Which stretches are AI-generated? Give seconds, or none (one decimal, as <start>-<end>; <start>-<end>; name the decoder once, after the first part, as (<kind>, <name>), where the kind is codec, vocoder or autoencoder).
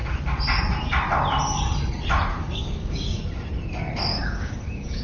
2.4-3.2 (codec, DAC); 4.1-5.0